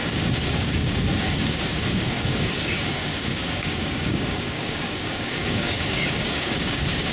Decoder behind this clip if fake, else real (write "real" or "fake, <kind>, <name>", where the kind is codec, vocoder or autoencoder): fake, codec, DAC